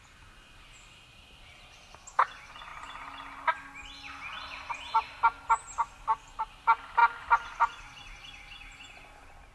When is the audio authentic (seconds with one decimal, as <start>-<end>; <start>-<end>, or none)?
0.0-9.5